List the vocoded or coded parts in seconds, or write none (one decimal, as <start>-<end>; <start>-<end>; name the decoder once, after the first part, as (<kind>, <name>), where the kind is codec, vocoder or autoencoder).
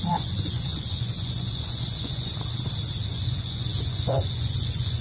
0.0-2.3 (vocoder, Vocos); 3.1-5.0